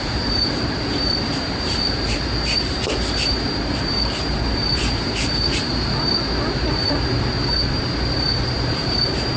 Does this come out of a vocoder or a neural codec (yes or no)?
yes